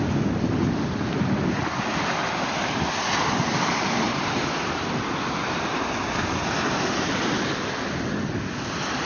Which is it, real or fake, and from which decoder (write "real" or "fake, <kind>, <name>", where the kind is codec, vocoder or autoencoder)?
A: real